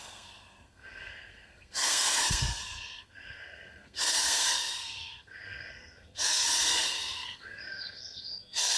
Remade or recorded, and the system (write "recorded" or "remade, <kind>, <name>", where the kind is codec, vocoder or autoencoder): remade, codec, SNAC